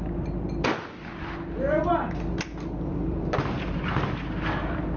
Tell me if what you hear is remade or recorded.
recorded